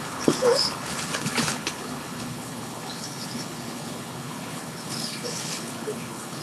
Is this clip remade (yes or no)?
yes